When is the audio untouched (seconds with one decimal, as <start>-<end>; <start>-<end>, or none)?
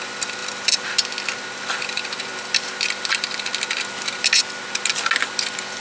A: 0.0-5.8